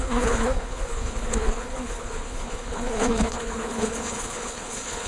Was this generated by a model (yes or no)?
yes